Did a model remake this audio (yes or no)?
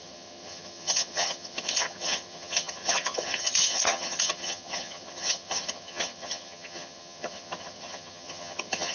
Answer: yes